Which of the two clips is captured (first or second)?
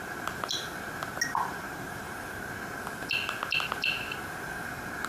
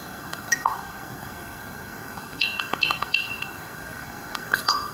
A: first